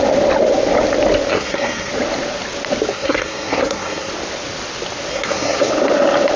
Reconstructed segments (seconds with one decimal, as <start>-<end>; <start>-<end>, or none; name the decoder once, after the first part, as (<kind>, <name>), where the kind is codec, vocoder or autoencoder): 1.3-1.9 (codec, SNAC); 2.9-4.1; 5.1-5.7